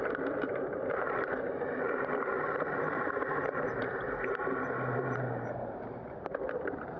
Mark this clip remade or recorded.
remade